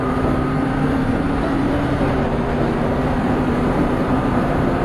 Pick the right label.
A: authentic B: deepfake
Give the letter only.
B